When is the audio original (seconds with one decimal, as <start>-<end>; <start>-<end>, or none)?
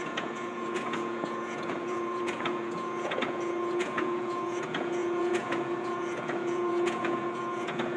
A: none